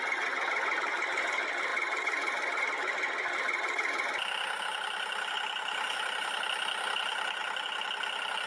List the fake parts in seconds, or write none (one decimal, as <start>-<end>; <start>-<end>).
none